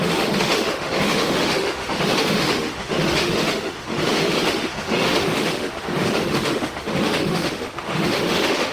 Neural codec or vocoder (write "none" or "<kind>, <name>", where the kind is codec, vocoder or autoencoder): autoencoder, DAC-VAE